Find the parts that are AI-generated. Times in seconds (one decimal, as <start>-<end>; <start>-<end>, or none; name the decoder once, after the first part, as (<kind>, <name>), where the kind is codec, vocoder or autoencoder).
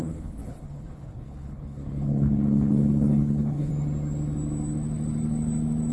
0.0-3.7 (codec, HILCodec)